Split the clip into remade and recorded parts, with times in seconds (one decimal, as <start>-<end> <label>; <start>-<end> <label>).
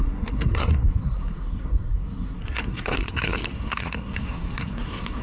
0.0-5.2 remade